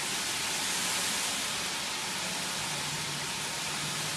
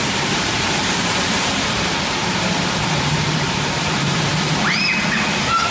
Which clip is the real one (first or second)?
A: first